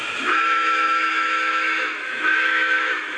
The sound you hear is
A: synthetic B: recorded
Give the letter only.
A